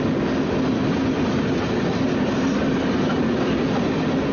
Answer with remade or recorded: recorded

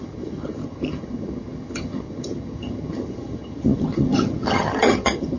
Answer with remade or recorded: remade